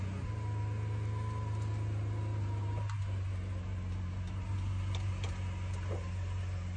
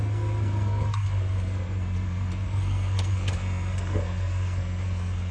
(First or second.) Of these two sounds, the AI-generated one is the second